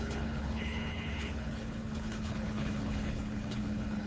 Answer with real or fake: fake